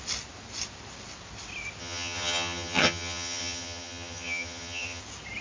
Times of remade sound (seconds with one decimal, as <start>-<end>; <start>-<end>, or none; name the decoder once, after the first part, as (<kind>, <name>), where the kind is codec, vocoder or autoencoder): 1.8-5.0 (vocoder, HiFi-GAN)